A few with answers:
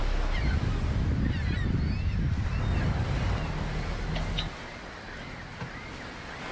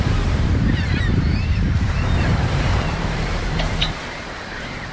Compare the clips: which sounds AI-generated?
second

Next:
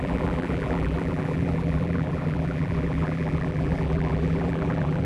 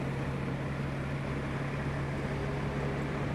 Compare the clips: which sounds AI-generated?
first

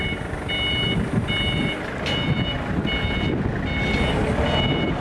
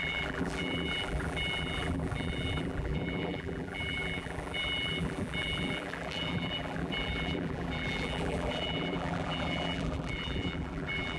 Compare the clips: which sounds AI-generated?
second